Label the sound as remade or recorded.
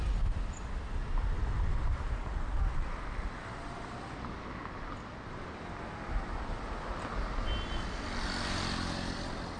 recorded